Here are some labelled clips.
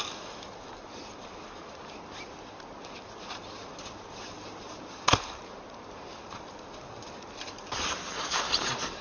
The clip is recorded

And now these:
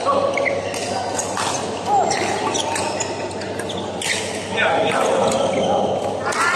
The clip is recorded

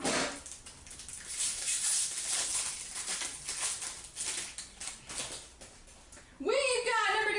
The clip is recorded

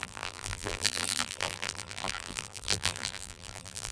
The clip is remade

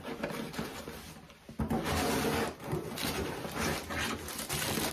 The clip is recorded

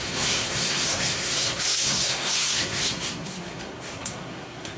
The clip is remade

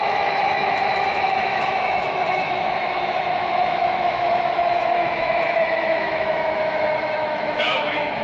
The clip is remade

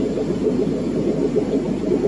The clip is recorded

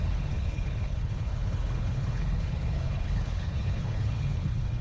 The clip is remade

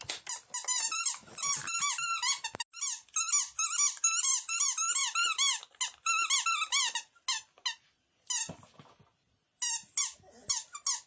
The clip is recorded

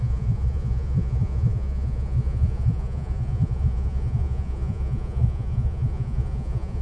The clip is remade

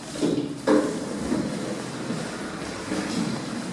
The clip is recorded